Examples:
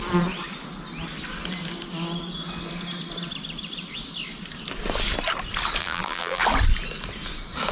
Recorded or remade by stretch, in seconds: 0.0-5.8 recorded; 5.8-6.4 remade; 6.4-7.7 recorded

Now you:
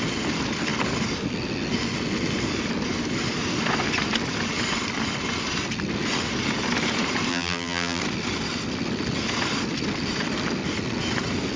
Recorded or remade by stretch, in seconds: 0.0-7.3 recorded; 7.3-8.0 remade; 8.0-11.6 recorded

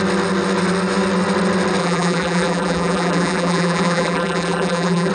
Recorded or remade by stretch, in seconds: 0.0-1.8 recorded; 1.8-5.1 remade

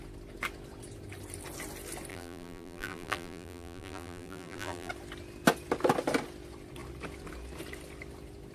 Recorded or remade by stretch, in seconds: 0.0-2.1 recorded; 2.1-4.9 remade; 4.9-8.5 recorded

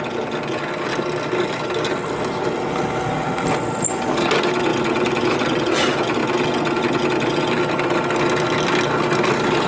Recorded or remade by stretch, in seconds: 0.0-9.7 recorded

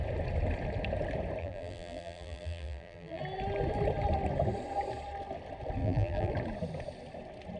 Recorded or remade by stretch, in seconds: 0.0-1.4 recorded; 1.4-3.2 remade; 3.2-5.8 recorded; 5.8-6.3 remade; 6.3-7.6 recorded